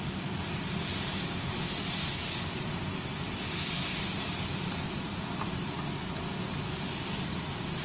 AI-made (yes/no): no